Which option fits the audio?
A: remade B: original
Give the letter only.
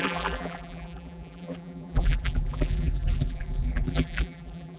A